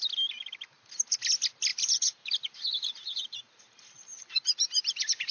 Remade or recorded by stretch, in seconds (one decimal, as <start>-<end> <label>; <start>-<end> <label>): 0.0-1.7 recorded; 1.7-5.3 remade

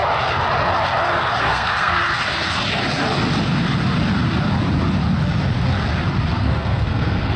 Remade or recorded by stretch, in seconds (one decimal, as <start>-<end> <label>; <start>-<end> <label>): 0.0-1.4 recorded; 1.4-2.0 remade; 2.0-6.3 recorded; 6.3-7.4 remade

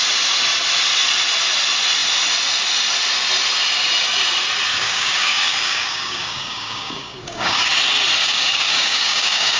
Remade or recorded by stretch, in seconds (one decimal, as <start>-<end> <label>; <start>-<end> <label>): 0.0-4.7 recorded; 4.7-7.7 remade; 7.7-8.2 recorded; 8.2-9.6 remade

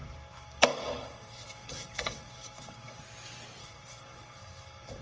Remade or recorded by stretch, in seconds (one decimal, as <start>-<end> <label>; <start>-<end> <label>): 0.0-3.0 remade; 3.0-3.6 recorded; 3.6-5.0 remade

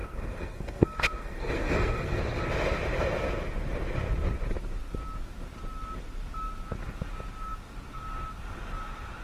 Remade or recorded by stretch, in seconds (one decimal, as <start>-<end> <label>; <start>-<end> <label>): 0.0-2.2 remade; 2.2-9.2 recorded

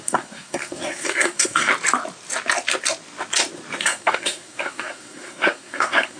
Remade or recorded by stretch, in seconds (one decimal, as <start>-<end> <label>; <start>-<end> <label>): 0.0-1.7 remade; 1.7-3.8 recorded; 3.8-6.2 remade